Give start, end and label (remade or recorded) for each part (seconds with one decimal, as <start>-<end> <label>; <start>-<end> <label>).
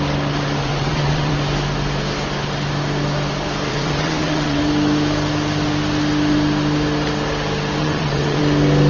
0.0-0.6 recorded; 0.6-1.3 remade; 1.3-3.7 recorded; 3.7-4.6 remade; 4.6-7.8 recorded; 7.8-8.4 remade; 8.4-8.9 recorded